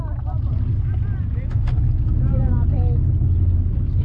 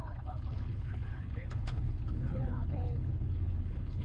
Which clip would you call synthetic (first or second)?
second